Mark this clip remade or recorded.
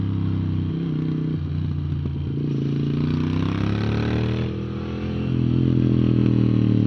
recorded